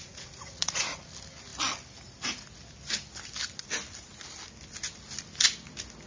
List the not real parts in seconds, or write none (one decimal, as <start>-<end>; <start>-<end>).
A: 0.0-1.1